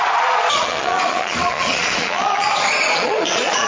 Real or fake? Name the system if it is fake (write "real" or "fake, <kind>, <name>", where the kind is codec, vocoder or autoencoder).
fake, vocoder, Vocos